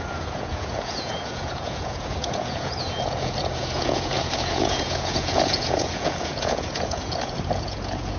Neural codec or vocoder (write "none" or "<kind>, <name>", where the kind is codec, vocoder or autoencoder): vocoder, Vocos